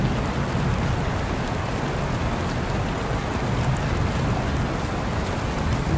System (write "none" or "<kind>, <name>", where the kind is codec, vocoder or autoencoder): none